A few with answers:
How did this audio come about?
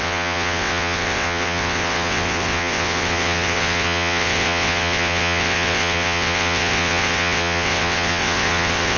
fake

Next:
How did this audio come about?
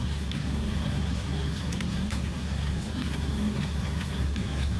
fake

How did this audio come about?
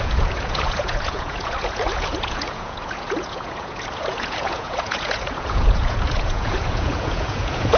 fake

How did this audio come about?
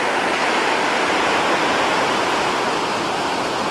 real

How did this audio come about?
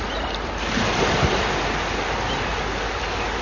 real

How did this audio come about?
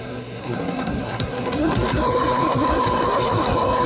fake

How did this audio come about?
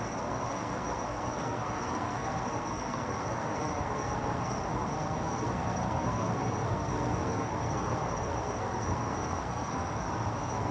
fake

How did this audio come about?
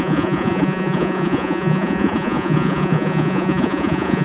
fake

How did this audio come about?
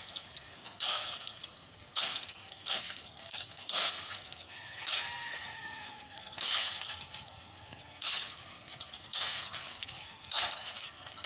fake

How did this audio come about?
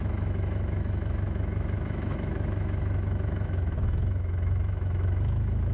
fake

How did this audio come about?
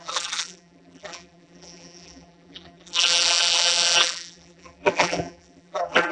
fake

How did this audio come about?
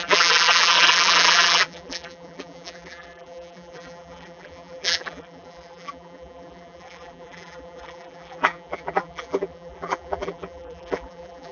fake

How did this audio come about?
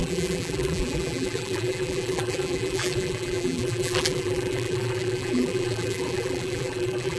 fake